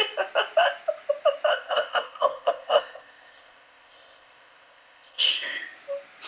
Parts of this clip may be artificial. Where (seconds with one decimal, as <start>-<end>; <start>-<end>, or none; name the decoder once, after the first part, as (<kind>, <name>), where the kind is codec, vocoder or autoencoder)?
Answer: 1.5-5.3 (codec, ZipCodec)